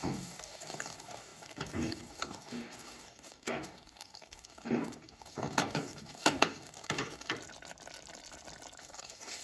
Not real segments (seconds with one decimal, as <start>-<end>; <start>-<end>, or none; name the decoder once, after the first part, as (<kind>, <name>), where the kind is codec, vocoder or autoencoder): 0.0-7.3 (codec, DAC); 8.8-9.4